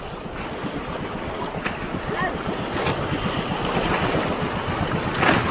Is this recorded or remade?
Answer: recorded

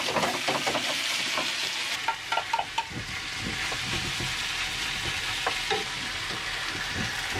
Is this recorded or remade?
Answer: recorded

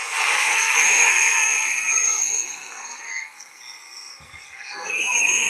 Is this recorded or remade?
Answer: remade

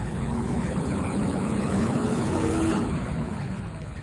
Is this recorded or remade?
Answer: remade